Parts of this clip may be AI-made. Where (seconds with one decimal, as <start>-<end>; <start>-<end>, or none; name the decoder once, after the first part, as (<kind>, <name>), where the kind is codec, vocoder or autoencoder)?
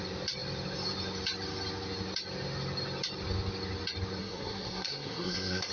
4.2-5.7 (codec, SNAC)